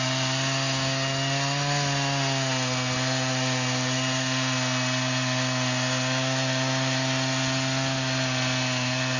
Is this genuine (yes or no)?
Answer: yes